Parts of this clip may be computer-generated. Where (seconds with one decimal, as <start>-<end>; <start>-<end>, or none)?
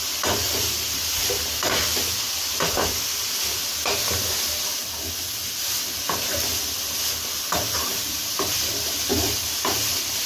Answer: 0.0-3.2; 6.0-9.1; 9.9-10.3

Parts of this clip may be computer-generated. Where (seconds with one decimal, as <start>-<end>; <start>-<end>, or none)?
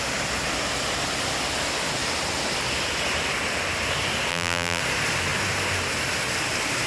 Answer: 4.3-4.8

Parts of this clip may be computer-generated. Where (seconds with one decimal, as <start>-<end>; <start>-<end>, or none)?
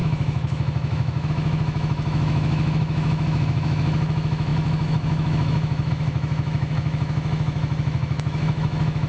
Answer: 0.0-9.1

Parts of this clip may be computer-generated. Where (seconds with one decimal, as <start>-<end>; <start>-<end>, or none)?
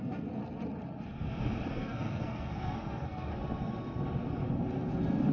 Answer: 0.0-0.4; 1.7-3.3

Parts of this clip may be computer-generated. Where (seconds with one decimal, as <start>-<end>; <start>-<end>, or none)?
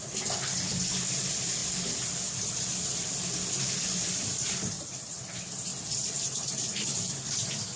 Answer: 0.0-7.8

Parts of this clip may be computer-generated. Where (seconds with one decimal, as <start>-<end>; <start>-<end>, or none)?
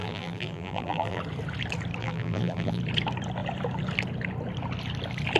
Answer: 0.0-1.2; 2.0-2.8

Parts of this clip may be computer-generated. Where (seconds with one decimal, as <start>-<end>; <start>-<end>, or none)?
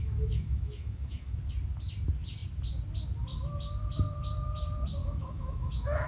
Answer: 0.0-1.4; 5.0-6.1